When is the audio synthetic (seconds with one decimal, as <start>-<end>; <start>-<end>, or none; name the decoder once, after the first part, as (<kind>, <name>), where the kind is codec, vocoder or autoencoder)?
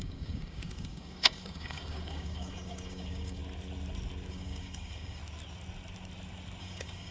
0.0-3.4 (codec, DAC); 4.3-5.2; 6.6-7.1